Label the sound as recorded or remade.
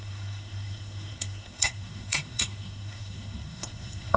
remade